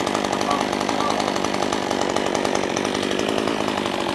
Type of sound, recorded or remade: recorded